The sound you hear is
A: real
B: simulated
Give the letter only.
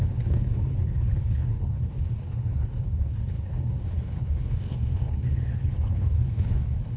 B